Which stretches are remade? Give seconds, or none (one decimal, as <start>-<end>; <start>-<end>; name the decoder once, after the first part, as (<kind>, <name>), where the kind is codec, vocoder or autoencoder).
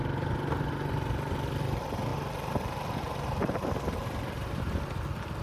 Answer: none